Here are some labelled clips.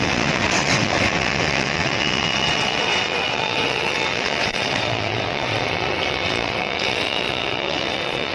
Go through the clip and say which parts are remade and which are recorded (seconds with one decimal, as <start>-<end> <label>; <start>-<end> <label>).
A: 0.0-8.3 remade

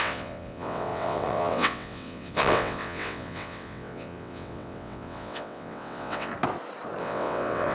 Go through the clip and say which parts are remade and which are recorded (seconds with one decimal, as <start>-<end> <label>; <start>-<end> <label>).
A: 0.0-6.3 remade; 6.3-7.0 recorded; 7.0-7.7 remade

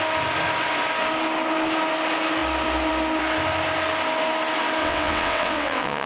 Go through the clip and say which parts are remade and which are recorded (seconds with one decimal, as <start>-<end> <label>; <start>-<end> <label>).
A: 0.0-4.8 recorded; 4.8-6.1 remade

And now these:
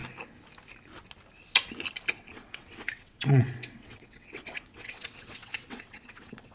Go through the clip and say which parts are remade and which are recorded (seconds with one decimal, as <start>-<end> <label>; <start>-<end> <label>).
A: 0.0-2.3 recorded; 2.3-6.5 remade

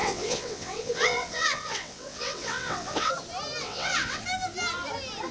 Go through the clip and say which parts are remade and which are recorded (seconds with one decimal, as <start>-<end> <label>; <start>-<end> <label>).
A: 0.0-3.1 remade; 3.1-3.6 recorded; 3.6-4.2 remade; 4.2-5.3 recorded

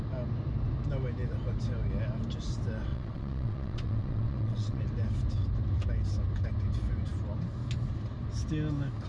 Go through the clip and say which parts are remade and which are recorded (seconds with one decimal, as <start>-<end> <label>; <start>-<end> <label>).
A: 0.0-2.9 recorded; 2.9-4.8 remade; 4.8-9.1 recorded

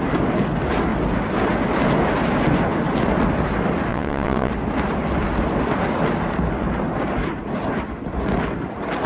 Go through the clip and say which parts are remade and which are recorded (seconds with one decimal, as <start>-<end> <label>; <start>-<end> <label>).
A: 0.0-3.9 recorded; 3.9-4.5 remade; 4.5-9.1 recorded

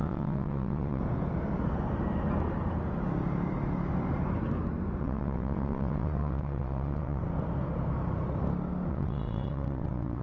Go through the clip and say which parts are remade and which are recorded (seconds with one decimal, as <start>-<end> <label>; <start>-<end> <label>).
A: 0.0-1.0 remade; 1.0-5.0 recorded; 5.0-7.2 remade; 7.2-8.9 recorded; 8.9-10.2 remade